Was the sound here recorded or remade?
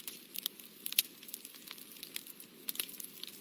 recorded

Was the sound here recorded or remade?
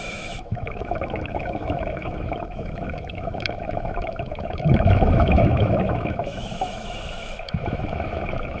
remade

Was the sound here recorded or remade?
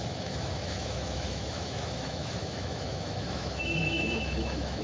remade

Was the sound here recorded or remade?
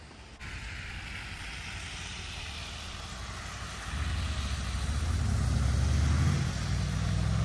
recorded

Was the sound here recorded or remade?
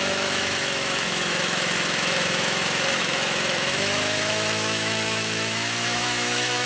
remade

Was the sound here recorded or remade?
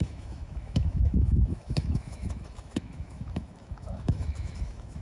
remade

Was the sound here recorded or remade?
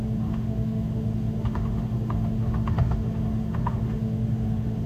remade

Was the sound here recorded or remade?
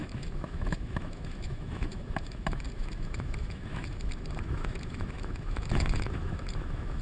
remade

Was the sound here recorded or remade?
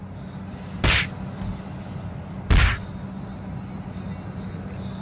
recorded